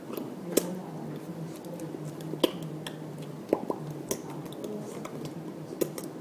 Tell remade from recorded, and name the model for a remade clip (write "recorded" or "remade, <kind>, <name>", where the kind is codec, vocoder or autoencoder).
recorded